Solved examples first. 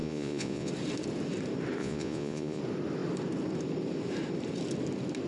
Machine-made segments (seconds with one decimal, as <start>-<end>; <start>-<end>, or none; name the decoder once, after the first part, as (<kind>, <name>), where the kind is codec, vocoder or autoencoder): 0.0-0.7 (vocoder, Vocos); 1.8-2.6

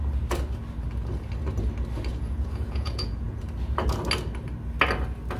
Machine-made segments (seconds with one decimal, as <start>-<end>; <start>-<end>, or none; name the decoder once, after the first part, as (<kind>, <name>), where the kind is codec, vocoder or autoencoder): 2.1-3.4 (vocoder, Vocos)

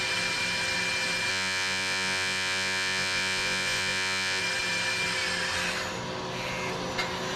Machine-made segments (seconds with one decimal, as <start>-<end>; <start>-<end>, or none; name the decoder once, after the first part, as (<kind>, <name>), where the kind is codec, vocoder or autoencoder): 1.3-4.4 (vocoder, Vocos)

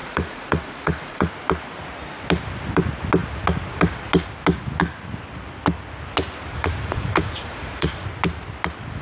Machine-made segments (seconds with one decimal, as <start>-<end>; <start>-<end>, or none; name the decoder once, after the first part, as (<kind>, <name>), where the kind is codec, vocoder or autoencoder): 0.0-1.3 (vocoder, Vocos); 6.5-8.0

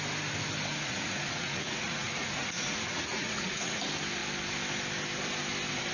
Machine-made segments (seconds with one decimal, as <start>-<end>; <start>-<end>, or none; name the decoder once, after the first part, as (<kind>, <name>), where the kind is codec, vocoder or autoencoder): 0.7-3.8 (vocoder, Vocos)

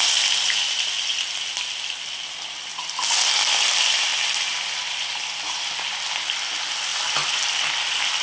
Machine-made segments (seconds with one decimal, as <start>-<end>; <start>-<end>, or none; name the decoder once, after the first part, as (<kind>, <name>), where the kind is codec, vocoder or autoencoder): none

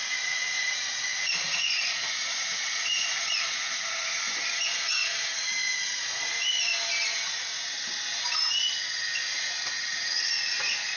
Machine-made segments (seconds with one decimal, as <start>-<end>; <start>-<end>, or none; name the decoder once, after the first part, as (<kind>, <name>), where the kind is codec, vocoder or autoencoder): 0.0-6.7 (vocoder, Vocos); 9.2-11.0